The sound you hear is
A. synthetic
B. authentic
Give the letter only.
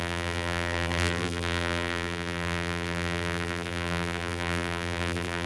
A